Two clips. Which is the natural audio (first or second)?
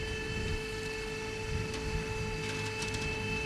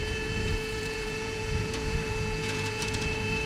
first